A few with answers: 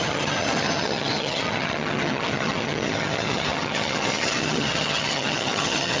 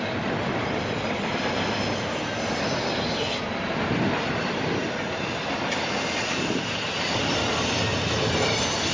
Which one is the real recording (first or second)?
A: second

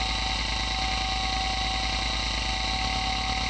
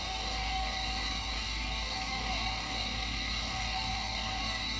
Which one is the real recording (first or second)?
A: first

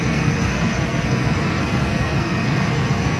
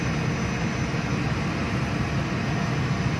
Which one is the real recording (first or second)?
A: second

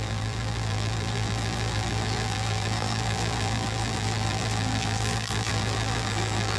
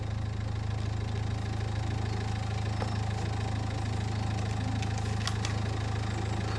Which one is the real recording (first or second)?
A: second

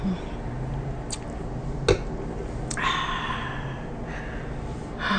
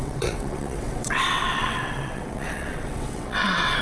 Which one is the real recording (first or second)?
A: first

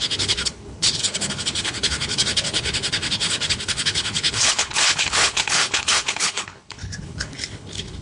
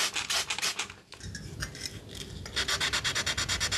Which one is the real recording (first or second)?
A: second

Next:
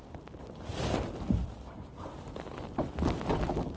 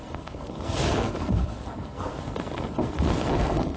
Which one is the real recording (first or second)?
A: first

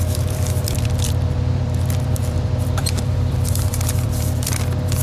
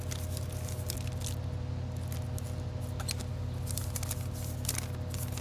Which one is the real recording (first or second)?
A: second